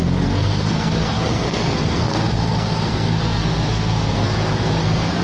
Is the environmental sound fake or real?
fake